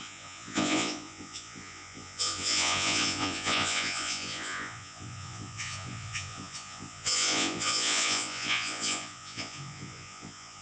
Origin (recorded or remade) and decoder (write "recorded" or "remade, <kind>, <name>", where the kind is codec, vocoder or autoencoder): remade, vocoder, Vocos